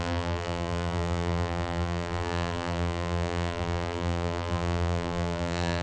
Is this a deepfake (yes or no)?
yes